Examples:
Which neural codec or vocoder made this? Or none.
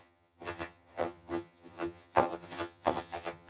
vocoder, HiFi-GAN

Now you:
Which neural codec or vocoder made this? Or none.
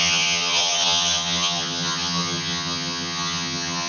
vocoder, HiFi-GAN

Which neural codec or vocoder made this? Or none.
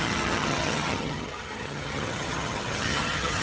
vocoder, HiFi-GAN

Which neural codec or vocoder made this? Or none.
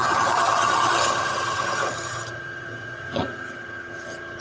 vocoder, HiFi-GAN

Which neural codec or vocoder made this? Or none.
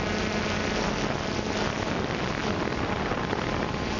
none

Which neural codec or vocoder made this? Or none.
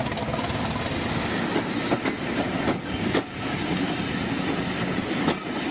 none